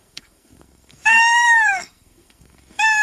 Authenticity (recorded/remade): remade